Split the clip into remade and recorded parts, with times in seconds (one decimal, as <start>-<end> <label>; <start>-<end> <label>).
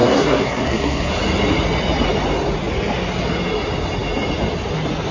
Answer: 0.0-1.1 remade; 1.1-5.1 recorded